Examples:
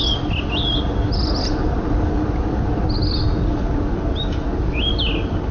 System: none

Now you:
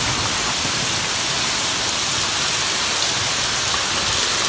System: none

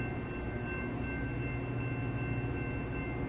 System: none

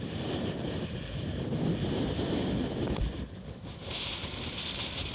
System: vocoder, BigVGAN v2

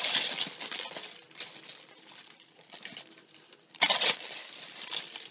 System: vocoder, BigVGAN v2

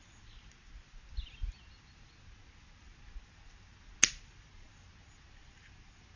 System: none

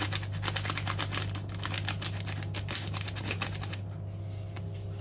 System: none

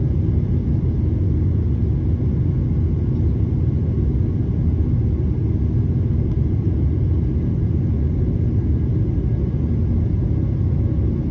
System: none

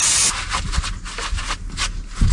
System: none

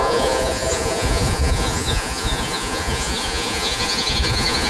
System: vocoder, Vocos